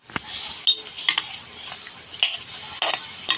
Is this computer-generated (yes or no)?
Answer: no